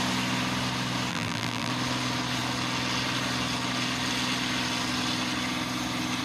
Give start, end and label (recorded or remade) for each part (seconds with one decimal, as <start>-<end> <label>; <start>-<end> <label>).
0.0-1.1 recorded; 1.1-1.7 remade; 1.7-6.2 recorded